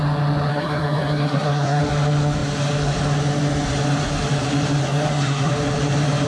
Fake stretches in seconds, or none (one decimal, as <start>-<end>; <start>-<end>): 0.5-1.8; 4.8-5.5